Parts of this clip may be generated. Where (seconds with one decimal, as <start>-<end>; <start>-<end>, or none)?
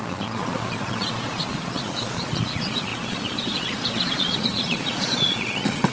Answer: 0.0-5.9